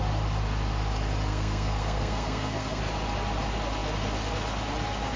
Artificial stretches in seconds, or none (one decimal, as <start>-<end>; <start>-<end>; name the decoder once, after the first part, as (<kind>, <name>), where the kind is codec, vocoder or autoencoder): 1.3-2.8 (codec, SNAC)